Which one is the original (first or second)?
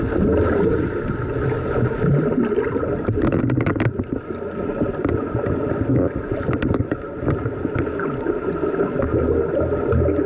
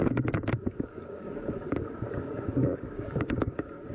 first